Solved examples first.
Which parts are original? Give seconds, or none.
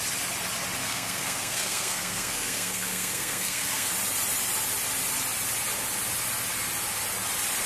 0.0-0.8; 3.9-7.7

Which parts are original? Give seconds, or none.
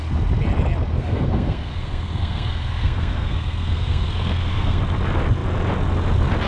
0.0-0.9; 4.8-6.5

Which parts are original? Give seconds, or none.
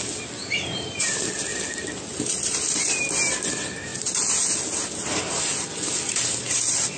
0.0-7.0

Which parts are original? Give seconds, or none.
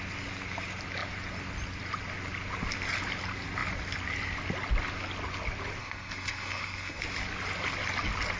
0.0-5.8; 7.0-8.4